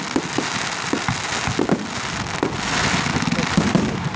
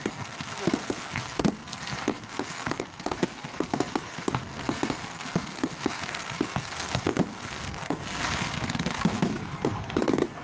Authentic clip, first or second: first